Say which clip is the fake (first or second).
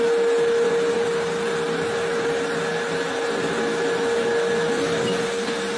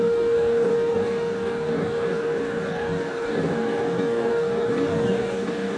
second